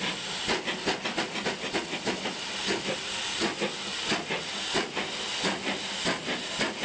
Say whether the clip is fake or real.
real